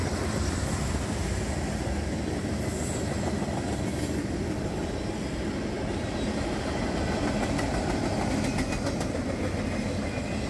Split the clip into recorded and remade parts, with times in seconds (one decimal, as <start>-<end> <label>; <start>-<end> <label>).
0.0-10.5 recorded